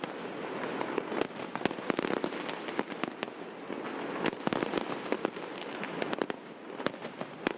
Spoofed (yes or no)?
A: no